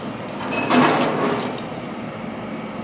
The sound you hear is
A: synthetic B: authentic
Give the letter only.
B